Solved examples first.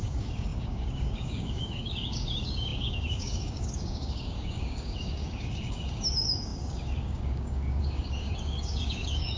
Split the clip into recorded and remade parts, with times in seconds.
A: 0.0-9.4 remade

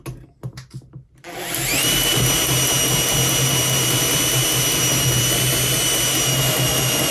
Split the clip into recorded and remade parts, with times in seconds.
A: 0.0-7.1 recorded

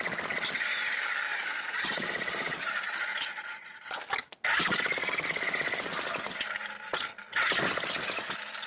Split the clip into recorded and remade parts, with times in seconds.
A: 0.0-1.3 recorded; 1.3-4.0 remade; 4.0-8.7 recorded